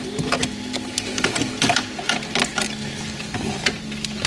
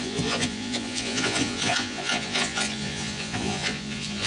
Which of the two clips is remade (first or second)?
second